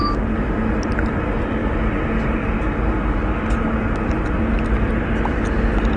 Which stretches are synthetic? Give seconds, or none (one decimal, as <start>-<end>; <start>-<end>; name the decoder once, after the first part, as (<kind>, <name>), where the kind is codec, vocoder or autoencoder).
none